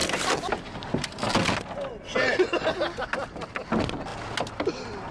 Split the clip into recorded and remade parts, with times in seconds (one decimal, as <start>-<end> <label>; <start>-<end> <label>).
0.0-5.1 recorded